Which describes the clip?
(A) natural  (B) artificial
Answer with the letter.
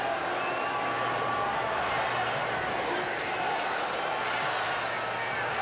A